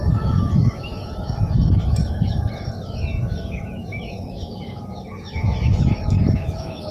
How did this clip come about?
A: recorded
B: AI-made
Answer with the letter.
B